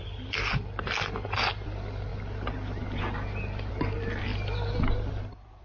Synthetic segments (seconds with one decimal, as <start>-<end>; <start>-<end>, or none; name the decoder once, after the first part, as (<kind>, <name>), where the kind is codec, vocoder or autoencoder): none